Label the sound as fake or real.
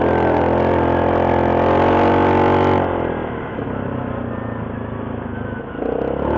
real